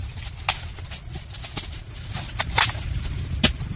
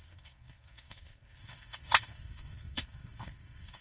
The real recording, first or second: first